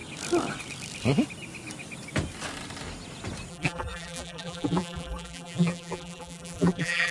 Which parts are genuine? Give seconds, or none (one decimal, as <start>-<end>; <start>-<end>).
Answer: 0.0-3.5